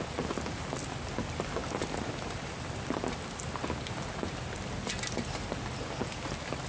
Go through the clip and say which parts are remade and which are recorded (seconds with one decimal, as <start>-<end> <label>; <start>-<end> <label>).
0.0-6.7 recorded